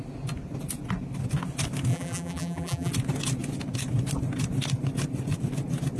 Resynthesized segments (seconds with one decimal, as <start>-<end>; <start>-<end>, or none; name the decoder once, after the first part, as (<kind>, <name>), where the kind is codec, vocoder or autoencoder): 1.9-2.9 (vocoder, BigVGAN v2)